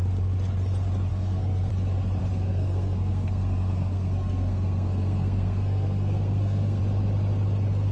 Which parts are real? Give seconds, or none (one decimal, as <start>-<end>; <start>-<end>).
0.0-1.1; 1.7-2.2; 6.8-7.9